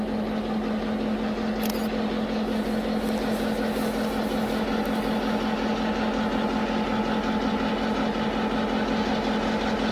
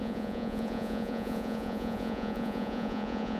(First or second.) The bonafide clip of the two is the first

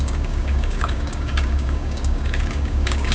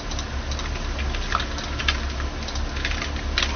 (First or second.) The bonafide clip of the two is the second